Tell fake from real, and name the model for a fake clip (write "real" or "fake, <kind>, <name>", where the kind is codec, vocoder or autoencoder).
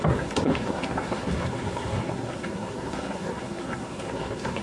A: fake, codec, SNAC